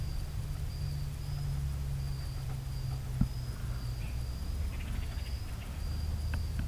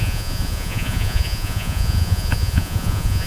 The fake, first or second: second